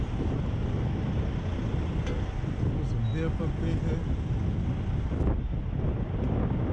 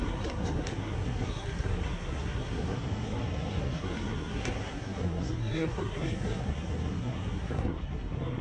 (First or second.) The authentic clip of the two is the first